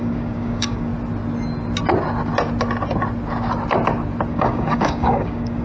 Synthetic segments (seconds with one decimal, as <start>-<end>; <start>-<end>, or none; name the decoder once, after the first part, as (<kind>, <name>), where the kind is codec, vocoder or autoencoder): 0.0-0.9 (codec, DAC); 4.3-5.6